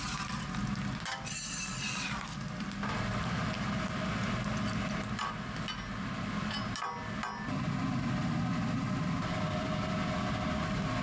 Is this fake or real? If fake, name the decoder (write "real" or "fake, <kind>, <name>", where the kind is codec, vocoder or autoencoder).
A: real